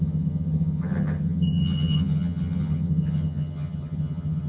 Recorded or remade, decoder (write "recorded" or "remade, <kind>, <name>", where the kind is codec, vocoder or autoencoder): remade, vocoder, HiFi-GAN